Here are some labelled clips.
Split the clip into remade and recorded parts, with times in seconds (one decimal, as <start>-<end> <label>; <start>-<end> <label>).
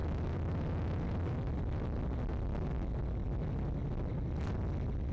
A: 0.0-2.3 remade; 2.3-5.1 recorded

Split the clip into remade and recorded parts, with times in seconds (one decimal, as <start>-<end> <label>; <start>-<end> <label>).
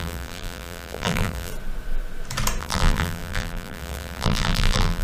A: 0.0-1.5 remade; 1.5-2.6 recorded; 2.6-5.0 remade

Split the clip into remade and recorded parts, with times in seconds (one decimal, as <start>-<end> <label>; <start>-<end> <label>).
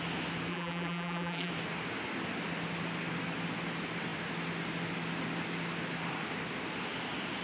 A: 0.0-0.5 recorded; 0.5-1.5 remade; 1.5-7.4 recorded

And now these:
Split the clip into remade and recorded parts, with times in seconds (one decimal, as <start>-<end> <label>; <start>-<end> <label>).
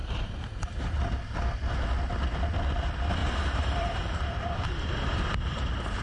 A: 0.0-0.7 remade; 0.7-3.2 recorded; 3.2-6.0 remade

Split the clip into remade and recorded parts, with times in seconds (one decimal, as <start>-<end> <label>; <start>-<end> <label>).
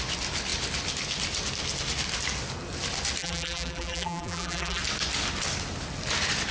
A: 0.0-3.2 recorded; 3.2-4.8 remade; 4.8-6.5 recorded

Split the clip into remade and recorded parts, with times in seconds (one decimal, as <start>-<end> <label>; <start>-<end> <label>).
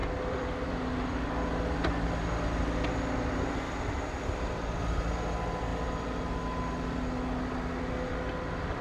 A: 0.0-0.8 remade; 0.8-8.8 recorded